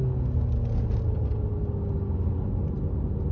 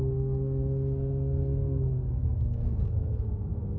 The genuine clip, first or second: first